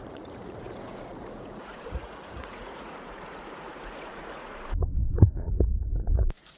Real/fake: fake